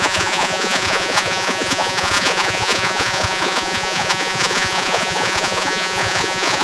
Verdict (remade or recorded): remade